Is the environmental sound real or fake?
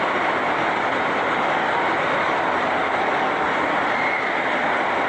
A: real